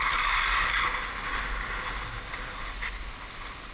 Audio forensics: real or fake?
real